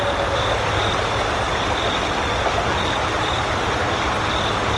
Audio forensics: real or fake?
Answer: real